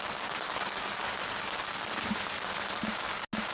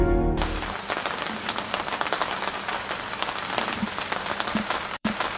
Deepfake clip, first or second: second